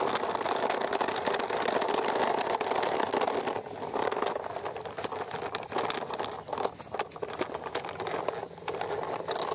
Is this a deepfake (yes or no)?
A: no